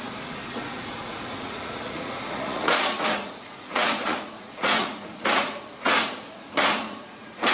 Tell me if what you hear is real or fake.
fake